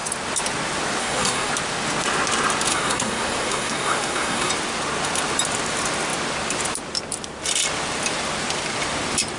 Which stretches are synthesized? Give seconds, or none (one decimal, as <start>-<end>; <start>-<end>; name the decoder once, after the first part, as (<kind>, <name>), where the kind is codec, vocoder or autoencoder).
1.0-1.5 (codec, SNAC); 2.7-4.5